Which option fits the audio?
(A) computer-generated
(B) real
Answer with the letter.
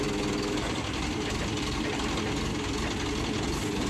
B